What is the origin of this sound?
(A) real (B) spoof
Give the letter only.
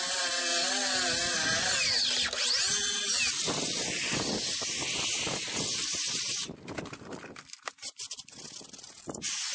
A